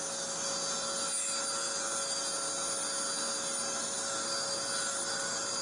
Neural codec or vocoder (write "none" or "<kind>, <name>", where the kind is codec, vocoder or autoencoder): none